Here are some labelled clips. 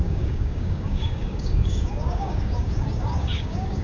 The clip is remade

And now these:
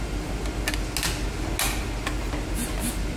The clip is recorded